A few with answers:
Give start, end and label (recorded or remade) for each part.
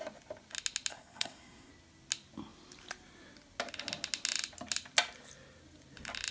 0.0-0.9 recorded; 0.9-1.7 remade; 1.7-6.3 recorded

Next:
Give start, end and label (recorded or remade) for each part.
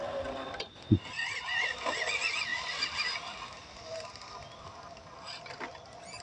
0.0-6.2 recorded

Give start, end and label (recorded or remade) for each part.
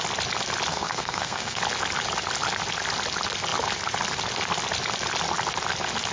0.0-0.7 recorded; 0.7-1.6 remade; 1.6-6.1 recorded